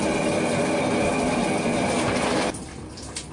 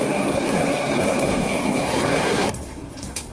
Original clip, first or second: first